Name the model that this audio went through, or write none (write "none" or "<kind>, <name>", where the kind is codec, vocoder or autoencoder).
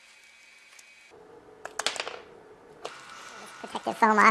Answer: none